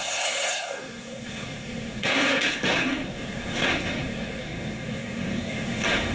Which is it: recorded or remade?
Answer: remade